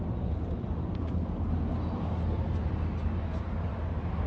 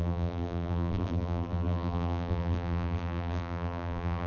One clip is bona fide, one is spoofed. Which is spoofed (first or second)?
second